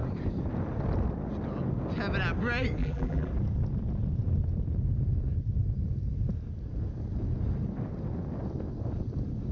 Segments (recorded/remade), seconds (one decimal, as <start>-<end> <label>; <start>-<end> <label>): 0.0-2.8 recorded; 2.8-3.3 remade; 3.3-9.5 recorded